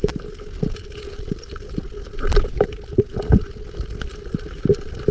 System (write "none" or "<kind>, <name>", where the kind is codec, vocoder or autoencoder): none